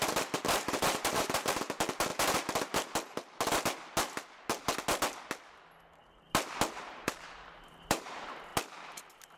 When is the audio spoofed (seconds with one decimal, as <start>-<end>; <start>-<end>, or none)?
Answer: 0.0-2.1; 6.9-8.5